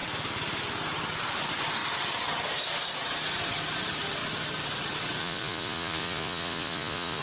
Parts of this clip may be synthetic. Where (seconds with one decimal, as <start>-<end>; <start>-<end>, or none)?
5.2-7.2

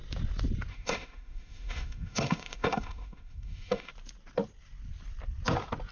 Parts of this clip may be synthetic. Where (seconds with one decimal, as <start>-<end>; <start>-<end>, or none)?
0.7-3.9

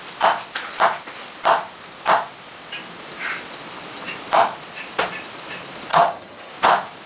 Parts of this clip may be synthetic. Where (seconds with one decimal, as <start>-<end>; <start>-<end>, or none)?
5.9-6.5